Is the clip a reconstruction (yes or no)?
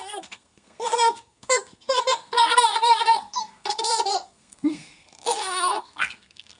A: yes